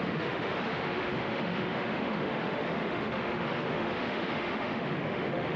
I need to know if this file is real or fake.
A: fake